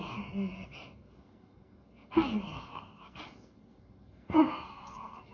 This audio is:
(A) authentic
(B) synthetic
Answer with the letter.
B